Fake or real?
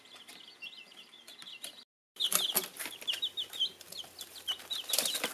real